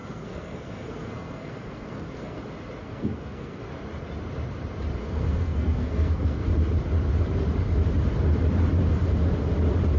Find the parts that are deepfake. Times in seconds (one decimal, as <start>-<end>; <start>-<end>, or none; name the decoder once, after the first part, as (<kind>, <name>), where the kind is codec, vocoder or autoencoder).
0.0-2.4 (codec, SNAC); 2.8-3.6; 5.0-6.5